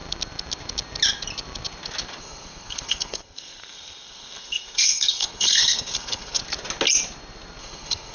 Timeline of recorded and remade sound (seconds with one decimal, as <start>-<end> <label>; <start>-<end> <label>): 0.0-2.2 recorded; 2.2-6.4 remade; 6.4-7.6 recorded; 7.6-8.1 remade